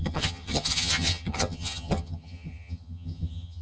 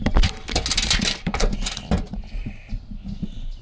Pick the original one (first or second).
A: second